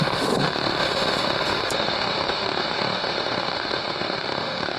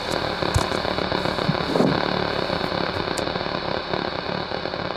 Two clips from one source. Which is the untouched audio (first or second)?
second